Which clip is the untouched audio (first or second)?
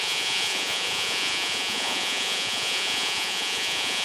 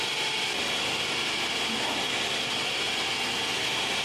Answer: second